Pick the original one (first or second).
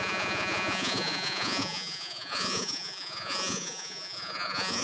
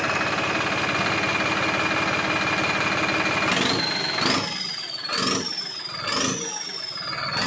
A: second